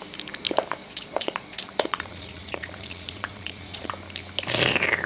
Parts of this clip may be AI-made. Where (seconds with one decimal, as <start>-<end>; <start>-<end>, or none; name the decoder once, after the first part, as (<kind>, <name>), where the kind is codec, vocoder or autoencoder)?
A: 0.8-3.9 (vocoder, Vocos)